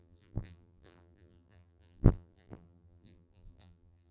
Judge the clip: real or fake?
fake